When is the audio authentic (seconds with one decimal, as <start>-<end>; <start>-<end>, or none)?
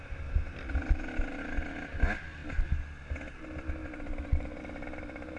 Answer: 0.0-5.4